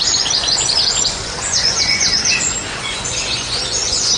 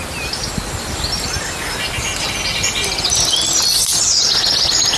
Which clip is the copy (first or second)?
first